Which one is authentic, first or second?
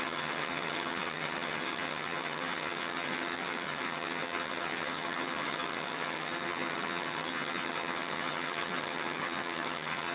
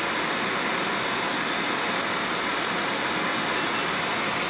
second